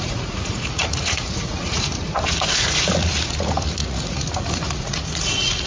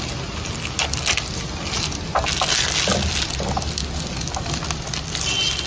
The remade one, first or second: first